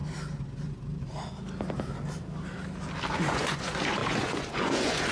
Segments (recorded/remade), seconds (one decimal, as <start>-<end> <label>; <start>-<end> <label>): 0.0-3.1 recorded; 3.1-5.1 remade